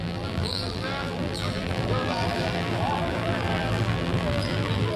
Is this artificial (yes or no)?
yes